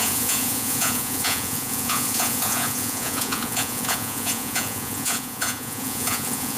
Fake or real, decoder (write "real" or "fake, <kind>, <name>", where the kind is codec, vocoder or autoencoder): fake, vocoder, Vocos